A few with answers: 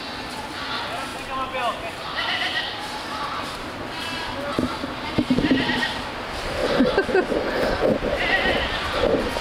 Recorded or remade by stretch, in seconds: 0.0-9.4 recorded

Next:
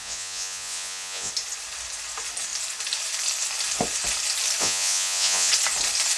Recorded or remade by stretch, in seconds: 0.0-1.3 remade; 1.3-4.6 recorded; 4.6-5.5 remade; 5.5-6.2 recorded

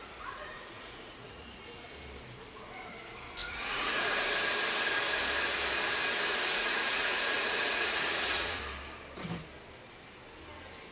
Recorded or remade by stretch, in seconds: 0.0-1.6 remade; 1.6-3.4 recorded; 3.4-4.2 remade; 4.2-6.3 recorded; 6.3-8.6 remade; 8.6-10.9 recorded

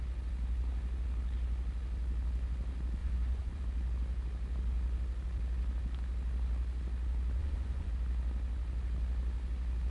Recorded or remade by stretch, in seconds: 0.0-3.0 recorded; 3.0-3.6 remade; 3.6-7.4 recorded; 7.4-7.9 remade; 7.9-9.9 recorded

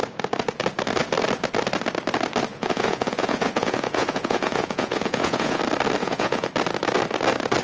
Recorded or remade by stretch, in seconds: 0.0-2.5 recorded; 2.5-5.6 remade; 5.6-6.0 recorded; 6.0-6.5 remade; 6.5-7.6 recorded

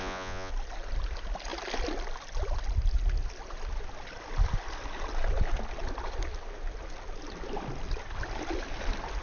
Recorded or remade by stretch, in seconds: 0.0-0.5 remade; 0.5-9.2 recorded

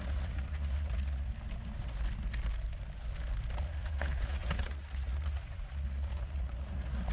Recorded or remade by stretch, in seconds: 0.0-1.3 remade; 1.3-3.6 recorded; 3.6-7.1 remade